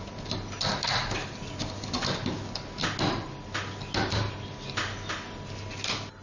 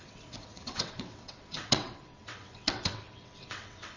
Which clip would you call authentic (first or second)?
first